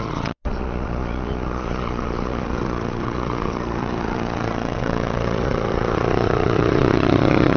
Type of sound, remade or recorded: remade